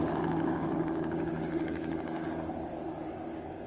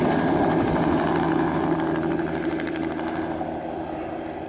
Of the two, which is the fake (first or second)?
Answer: first